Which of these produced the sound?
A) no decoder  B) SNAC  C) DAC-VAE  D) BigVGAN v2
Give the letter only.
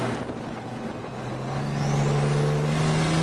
A